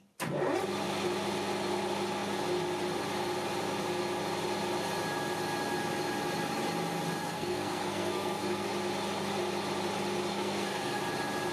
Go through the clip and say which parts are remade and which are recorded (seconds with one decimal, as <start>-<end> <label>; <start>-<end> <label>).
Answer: 0.0-7.2 recorded; 7.2-8.7 remade; 8.7-10.3 recorded; 10.3-11.0 remade; 11.0-11.5 recorded